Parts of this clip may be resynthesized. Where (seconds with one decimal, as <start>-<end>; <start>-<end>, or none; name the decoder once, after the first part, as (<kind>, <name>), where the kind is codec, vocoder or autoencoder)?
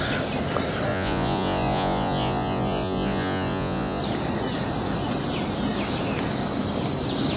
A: 0.9-4.0 (vocoder, Vocos)